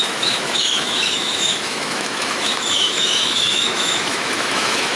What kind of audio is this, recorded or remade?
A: remade